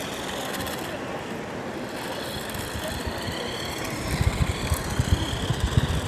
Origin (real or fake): real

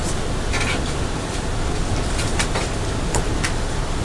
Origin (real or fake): fake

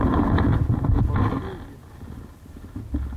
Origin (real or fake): real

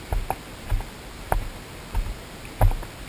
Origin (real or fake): real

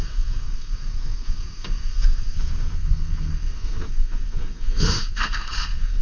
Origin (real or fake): fake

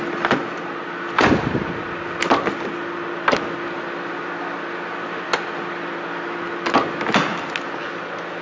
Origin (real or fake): real